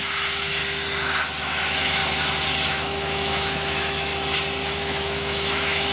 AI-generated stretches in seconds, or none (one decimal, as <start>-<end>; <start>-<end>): 0.0-0.6; 1.4-2.0; 2.7-4.1; 4.7-5.9